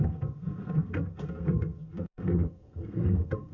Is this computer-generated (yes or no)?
yes